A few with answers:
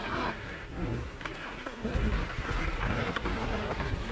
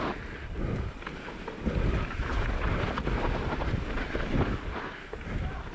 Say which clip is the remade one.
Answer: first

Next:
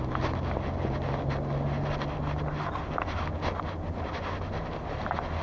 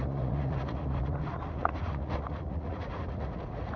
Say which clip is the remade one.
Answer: second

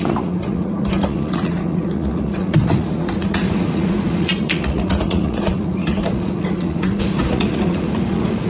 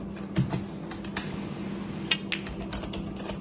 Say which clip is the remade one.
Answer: first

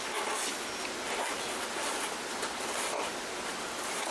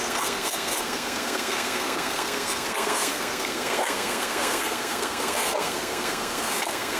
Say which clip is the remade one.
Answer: second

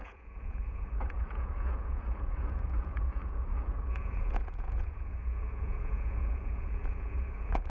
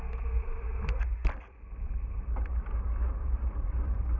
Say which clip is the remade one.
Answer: first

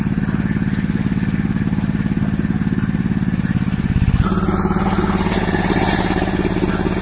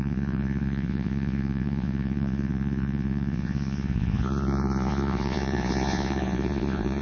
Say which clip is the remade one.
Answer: second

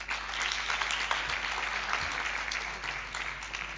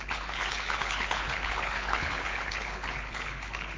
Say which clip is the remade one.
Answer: second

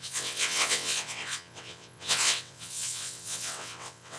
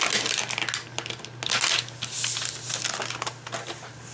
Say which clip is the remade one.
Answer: first